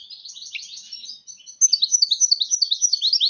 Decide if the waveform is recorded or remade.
recorded